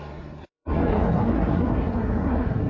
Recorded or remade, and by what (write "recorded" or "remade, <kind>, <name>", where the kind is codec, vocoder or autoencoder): remade, codec, SNAC